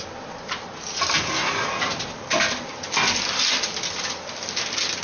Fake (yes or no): no